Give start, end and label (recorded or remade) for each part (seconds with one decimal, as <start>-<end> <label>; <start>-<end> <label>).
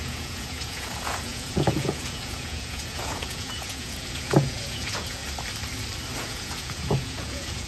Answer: 0.0-5.2 remade; 5.2-6.2 recorded; 6.2-7.7 remade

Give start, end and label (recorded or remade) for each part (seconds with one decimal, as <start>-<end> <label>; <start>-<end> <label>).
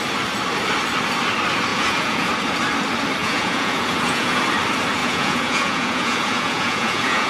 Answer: 0.0-1.7 recorded; 1.7-2.3 remade; 2.3-3.2 recorded; 3.2-4.4 remade; 4.4-5.0 recorded; 5.0-7.3 remade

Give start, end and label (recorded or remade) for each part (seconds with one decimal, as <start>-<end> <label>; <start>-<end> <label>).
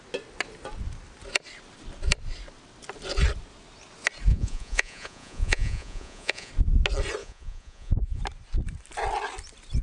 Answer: 0.0-4.3 recorded; 4.3-6.5 remade; 6.5-7.2 recorded; 7.2-8.2 remade; 8.2-9.8 recorded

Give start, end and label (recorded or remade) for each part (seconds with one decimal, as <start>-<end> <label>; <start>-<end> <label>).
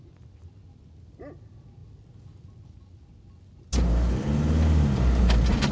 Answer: 0.0-5.7 recorded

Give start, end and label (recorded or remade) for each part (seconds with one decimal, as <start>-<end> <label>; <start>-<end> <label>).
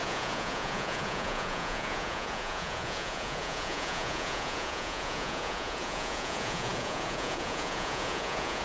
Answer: 0.0-8.6 remade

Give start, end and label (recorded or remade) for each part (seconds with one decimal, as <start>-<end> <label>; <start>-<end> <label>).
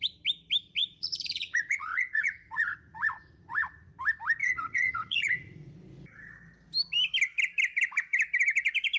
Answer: 0.0-0.8 recorded; 0.8-3.9 remade; 3.9-4.4 recorded; 4.4-5.7 remade; 5.7-9.0 recorded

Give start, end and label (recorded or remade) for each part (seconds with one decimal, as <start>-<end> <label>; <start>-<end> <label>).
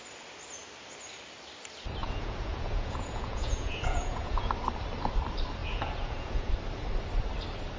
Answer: 0.0-2.0 recorded; 2.0-4.5 remade; 4.5-5.6 recorded; 5.6-6.5 remade; 6.5-7.8 recorded